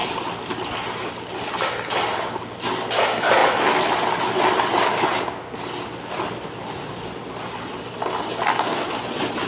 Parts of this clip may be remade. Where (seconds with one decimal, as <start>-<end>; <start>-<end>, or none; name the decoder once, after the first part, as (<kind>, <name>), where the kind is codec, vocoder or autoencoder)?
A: none